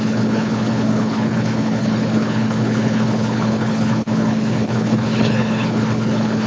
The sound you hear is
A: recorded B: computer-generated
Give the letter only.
B